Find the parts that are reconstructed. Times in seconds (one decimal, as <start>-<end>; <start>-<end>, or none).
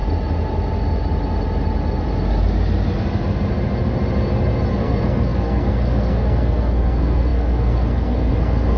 4.7-8.8